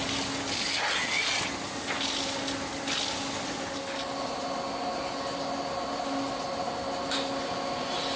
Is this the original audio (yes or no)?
yes